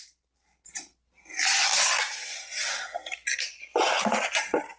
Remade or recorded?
recorded